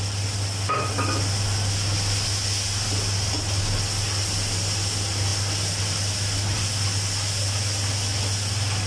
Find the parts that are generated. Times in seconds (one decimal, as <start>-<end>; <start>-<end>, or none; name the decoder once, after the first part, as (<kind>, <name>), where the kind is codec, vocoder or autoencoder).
none